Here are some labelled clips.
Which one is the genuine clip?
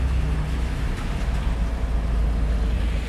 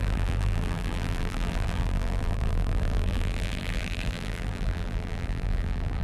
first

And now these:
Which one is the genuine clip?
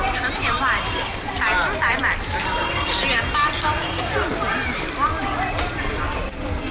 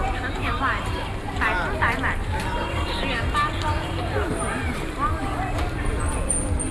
second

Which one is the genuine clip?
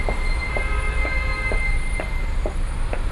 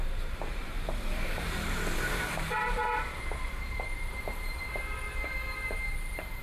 first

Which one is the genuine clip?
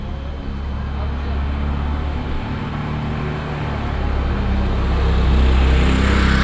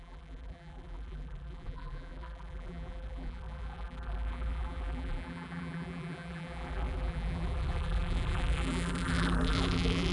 first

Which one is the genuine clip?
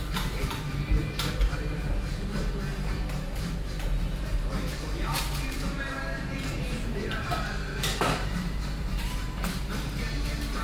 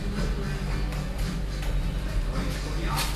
second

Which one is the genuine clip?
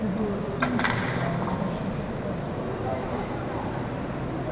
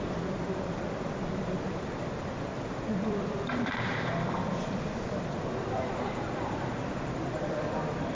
first